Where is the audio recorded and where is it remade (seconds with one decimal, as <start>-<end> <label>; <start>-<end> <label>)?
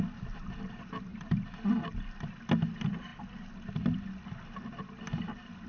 0.0-1.1 recorded; 1.1-1.7 remade; 1.7-5.7 recorded